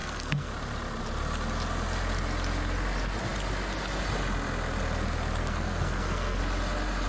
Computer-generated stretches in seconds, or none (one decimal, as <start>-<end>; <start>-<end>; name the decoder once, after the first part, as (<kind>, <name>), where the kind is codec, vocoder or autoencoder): 0.0-0.5 (codec, SNAC); 5.4-6.4